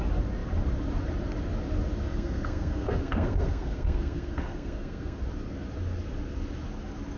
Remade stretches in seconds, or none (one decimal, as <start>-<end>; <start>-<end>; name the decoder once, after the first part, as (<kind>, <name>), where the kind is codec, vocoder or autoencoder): 2.1-5.2 (codec, SNAC)